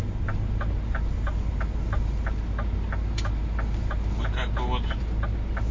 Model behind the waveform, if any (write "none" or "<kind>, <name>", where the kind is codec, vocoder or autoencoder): none